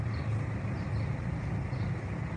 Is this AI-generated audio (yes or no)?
no